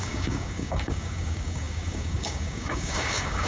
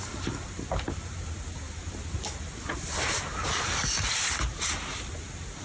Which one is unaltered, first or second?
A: second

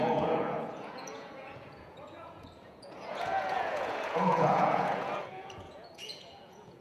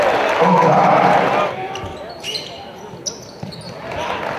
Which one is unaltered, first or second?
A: second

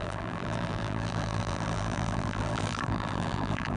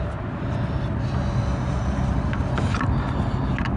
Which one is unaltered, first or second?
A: second